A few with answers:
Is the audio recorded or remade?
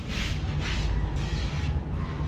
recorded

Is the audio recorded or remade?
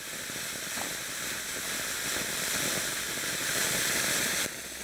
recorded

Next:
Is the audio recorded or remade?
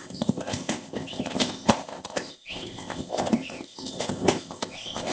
remade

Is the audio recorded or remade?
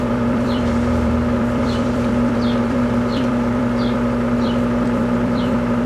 remade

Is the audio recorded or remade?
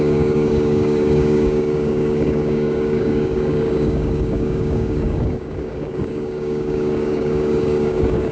remade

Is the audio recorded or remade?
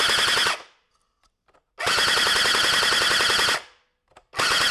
recorded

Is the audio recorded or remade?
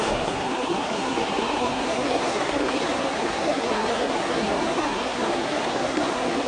remade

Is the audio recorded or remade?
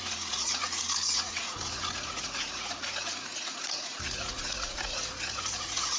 remade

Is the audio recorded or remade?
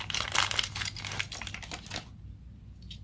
recorded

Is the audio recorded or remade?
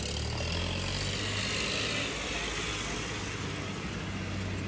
recorded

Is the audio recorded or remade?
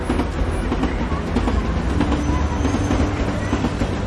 recorded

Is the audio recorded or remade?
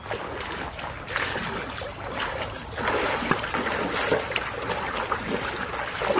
recorded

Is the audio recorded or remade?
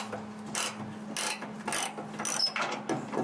recorded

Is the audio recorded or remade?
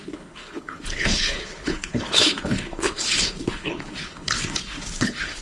remade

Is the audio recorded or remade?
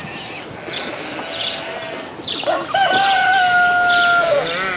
recorded